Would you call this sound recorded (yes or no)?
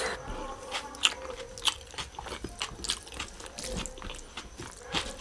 yes